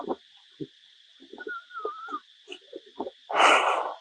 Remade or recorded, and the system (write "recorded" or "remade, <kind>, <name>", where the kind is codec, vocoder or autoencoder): remade, vocoder, BigVGAN v2